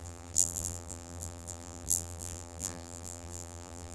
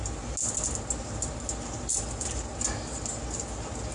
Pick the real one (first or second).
second